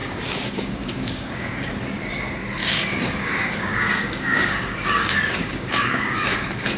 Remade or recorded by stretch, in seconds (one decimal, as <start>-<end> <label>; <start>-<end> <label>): 0.0-1.7 remade; 1.7-2.6 recorded; 2.6-6.8 remade